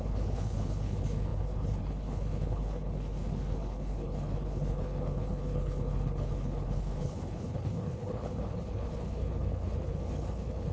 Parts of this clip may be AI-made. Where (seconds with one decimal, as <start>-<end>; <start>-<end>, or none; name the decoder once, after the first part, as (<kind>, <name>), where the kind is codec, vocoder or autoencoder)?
0.0-10.7 (codec, HILCodec)